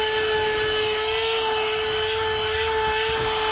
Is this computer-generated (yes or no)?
no